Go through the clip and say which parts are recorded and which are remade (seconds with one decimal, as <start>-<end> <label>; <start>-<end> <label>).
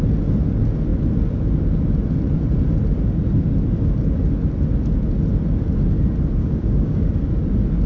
0.0-6.4 recorded; 6.4-7.1 remade; 7.1-7.9 recorded